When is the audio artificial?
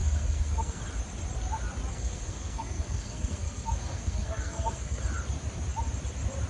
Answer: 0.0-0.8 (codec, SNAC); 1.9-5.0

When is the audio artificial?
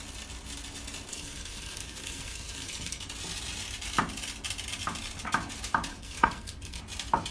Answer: 1.1-3.0 (codec, SNAC); 5.9-6.8